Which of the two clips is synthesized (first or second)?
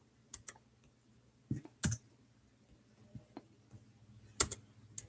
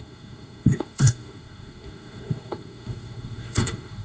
second